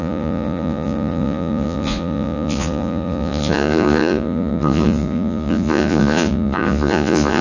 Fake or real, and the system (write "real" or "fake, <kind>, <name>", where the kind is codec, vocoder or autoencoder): fake, vocoder, Vocos